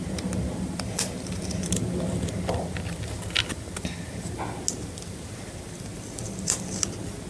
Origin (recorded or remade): recorded